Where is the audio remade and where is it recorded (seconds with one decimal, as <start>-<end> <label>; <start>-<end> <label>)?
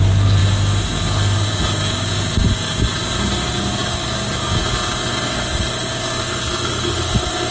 0.0-7.5 recorded